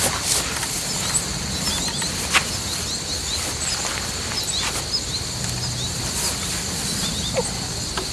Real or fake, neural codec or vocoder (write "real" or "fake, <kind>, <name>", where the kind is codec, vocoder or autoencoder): real